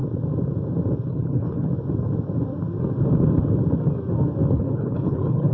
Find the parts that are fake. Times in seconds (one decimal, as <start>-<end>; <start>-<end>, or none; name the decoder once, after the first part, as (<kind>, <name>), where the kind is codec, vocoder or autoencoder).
1.1-1.7 (codec, HILCodec); 4.5-5.5